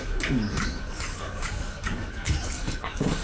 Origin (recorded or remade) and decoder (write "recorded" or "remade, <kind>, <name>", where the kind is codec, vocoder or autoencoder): remade, codec, DAC